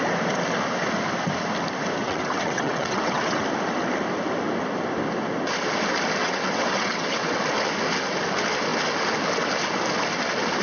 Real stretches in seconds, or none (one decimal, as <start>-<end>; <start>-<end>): 0.0-2.0; 3.4-6.2; 7.4-10.6